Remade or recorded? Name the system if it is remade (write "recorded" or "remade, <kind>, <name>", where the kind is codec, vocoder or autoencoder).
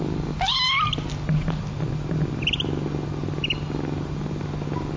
recorded